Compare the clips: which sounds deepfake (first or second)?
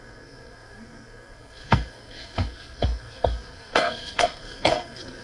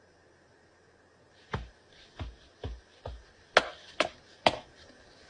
first